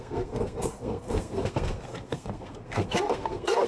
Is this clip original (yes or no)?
no